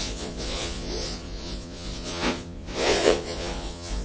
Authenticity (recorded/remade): remade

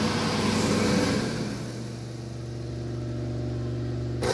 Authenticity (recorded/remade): recorded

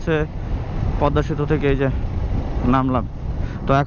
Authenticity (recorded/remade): recorded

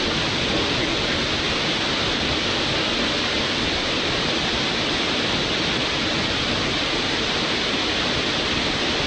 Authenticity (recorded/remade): recorded